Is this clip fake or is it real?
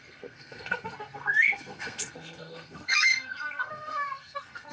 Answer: fake